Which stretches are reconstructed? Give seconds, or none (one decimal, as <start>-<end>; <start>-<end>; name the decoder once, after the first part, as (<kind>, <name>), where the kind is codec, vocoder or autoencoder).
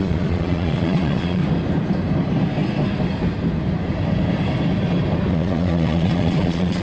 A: 0.0-1.4 (vocoder, Vocos); 5.3-6.8